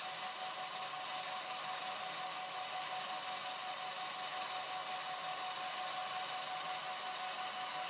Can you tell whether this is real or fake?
real